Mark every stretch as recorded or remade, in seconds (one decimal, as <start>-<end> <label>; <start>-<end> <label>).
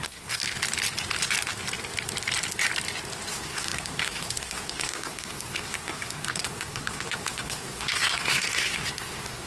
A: 0.0-0.4 remade; 0.4-3.3 recorded; 3.3-9.5 remade